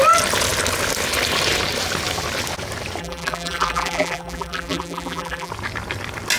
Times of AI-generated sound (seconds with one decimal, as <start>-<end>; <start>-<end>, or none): 3.0-5.5